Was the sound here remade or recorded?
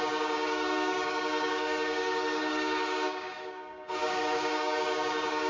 remade